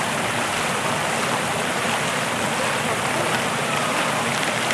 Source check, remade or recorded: recorded